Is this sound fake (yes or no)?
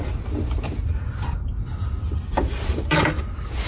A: no